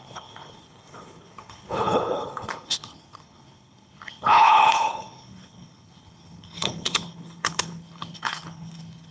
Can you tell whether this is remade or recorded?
remade